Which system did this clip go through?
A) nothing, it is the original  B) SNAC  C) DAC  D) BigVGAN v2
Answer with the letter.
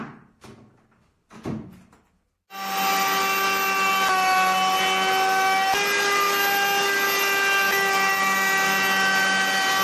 A